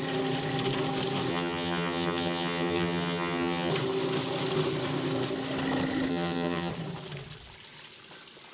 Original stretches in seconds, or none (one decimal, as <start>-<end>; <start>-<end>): 0.0-1.3; 3.7-6.1; 6.7-8.5